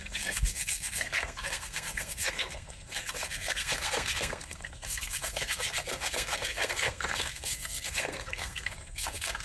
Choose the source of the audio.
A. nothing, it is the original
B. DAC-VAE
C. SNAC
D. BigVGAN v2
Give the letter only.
C